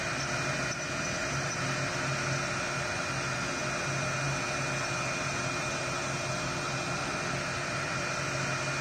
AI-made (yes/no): no